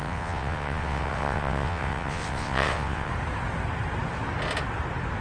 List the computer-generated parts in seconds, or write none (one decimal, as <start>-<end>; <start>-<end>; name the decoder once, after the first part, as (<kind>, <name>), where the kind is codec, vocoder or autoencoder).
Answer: 0.0-3.1 (vocoder, WaveNeXt)